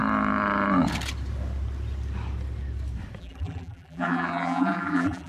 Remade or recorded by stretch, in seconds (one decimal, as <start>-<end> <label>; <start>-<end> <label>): 0.0-3.2 recorded; 3.2-5.3 remade